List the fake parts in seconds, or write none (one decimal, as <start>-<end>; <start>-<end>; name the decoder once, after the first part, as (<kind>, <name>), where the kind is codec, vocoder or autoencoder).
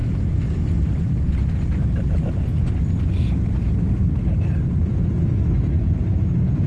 none